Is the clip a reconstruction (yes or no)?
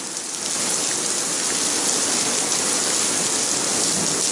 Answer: no